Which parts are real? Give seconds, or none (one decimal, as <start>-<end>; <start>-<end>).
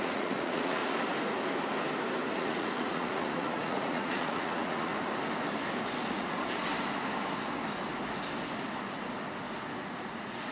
0.8-2.3; 4.9-6.1; 6.7-9.8